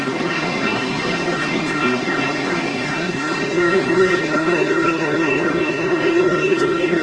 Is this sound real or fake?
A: fake